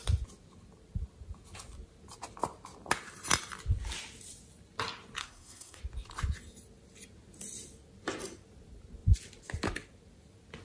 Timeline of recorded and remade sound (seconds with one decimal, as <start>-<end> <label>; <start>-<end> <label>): 0.0-5.2 recorded; 5.2-5.8 remade; 5.8-10.6 recorded